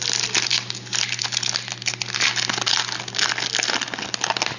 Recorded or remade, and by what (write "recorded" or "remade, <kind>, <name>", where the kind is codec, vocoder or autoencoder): recorded